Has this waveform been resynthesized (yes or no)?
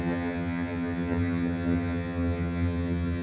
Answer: yes